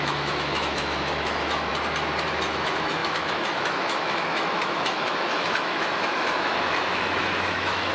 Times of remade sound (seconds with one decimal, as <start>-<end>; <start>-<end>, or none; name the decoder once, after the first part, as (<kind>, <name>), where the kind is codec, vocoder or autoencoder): 0.0-1.7 (autoencoder, DAC-VAE); 2.3-7.9